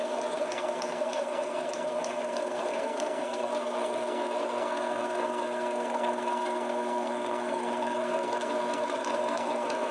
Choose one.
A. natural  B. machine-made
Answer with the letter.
B